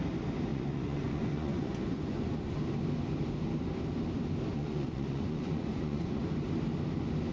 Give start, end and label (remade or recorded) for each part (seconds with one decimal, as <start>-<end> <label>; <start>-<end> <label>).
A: 0.0-0.5 recorded; 0.5-2.6 remade; 2.6-4.5 recorded; 4.5-6.2 remade; 6.2-7.3 recorded